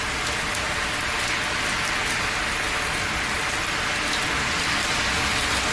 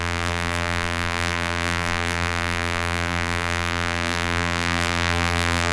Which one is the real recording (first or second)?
first